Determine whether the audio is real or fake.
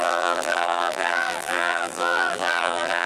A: fake